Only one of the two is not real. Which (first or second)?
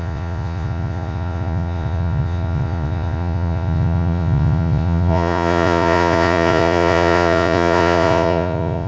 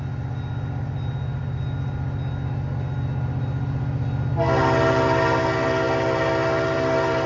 first